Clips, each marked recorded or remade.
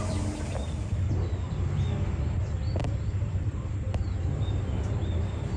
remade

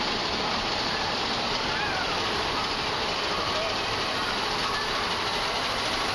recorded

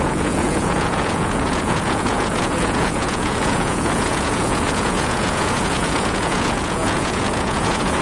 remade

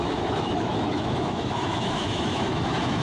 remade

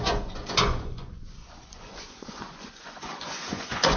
remade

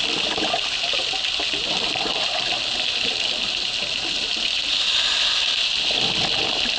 recorded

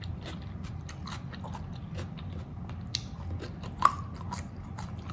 recorded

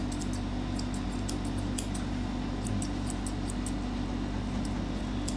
recorded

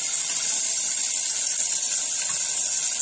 recorded